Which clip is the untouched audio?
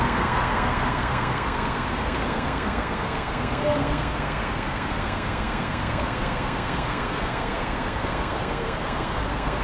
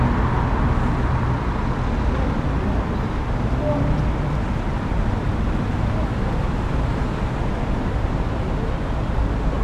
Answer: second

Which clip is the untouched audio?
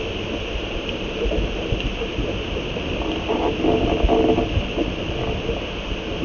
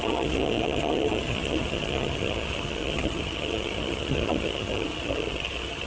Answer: first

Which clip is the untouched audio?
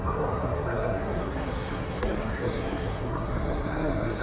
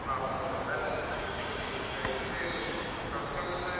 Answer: second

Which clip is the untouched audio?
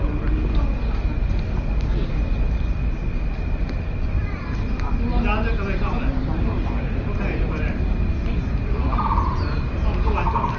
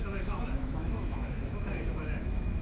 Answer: first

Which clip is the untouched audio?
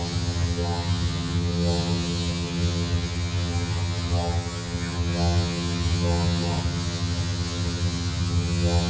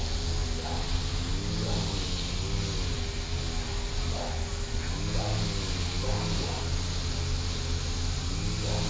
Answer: second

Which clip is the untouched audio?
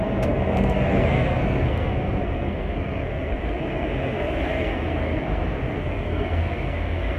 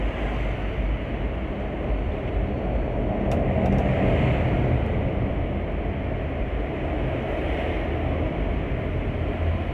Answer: second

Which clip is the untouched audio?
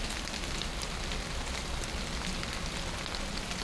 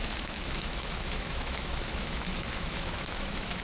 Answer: first